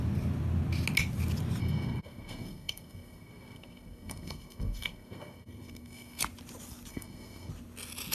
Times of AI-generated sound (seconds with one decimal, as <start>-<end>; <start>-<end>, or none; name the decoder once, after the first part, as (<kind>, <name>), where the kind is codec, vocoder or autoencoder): 1.6-6.2 (codec, SNAC); 6.9-7.5